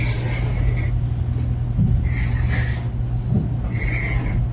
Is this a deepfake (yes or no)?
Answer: no